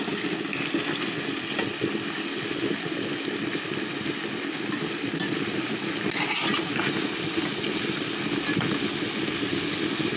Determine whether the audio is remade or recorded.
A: recorded